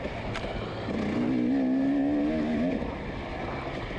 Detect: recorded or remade recorded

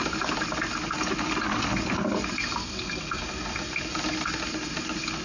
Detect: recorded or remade recorded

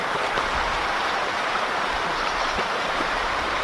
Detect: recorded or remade remade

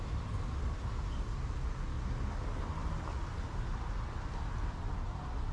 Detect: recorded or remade recorded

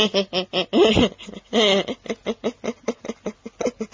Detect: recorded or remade recorded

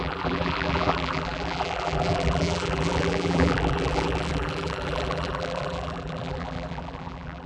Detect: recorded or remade remade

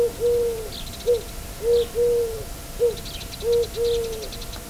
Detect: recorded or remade recorded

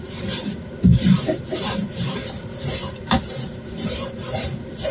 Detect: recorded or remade remade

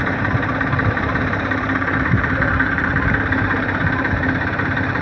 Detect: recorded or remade remade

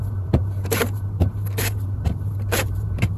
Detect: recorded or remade remade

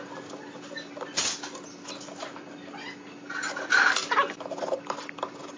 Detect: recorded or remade recorded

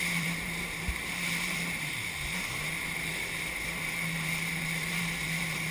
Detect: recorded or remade remade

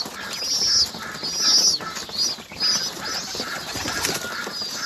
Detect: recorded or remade recorded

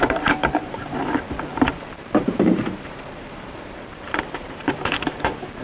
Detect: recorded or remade remade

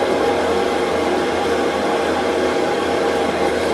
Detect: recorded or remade remade